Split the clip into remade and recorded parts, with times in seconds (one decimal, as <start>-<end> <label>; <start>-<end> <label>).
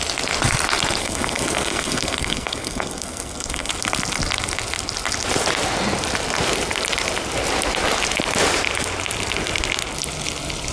0.0-1.0 recorded; 1.0-3.7 remade; 3.7-10.7 recorded